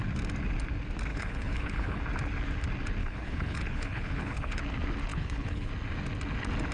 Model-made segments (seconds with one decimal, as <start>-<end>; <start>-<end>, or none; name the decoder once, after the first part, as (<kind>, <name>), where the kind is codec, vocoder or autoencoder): 1.1-2.0 (codec, HILCodec); 3.0-4.6; 5.1-5.7